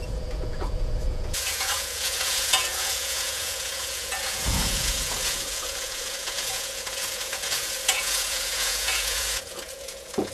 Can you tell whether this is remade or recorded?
remade